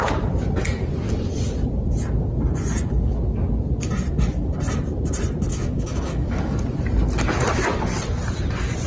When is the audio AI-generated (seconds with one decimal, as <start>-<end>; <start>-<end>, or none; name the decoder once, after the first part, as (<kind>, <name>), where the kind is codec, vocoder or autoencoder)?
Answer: 5.5-6.6 (autoencoder, DAC-VAE)